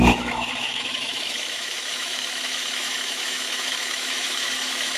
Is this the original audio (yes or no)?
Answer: no